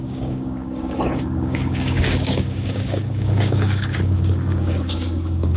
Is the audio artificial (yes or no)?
yes